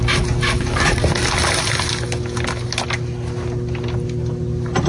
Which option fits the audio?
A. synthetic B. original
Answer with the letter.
B